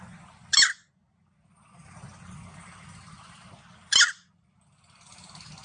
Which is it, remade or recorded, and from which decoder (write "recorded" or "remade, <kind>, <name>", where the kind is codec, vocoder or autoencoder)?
recorded